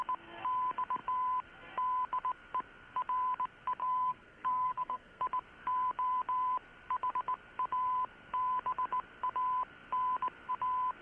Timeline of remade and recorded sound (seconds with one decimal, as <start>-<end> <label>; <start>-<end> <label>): 0.0-3.8 recorded; 3.8-5.2 remade; 5.2-11.0 recorded